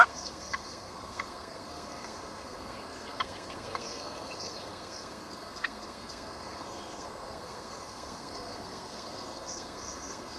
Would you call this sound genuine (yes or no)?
no